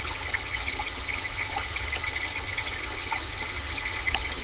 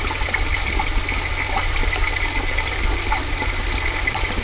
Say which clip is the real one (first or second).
second